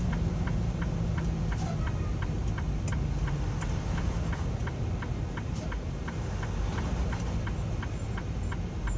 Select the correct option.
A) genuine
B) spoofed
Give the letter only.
A